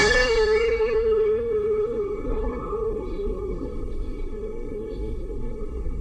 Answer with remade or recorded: remade